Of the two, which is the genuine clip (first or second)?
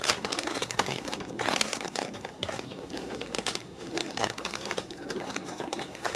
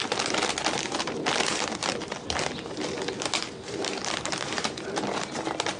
second